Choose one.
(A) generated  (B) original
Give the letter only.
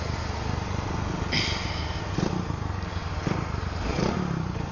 B